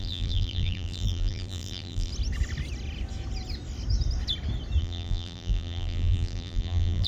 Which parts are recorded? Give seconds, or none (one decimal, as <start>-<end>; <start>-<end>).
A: 2.1-4.8